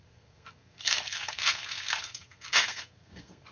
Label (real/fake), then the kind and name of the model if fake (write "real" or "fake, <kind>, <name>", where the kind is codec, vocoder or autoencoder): fake, codec, SNAC